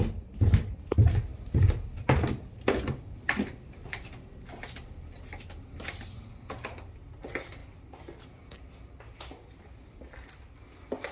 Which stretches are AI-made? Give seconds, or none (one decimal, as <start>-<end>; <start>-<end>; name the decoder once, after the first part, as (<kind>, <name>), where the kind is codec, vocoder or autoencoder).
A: none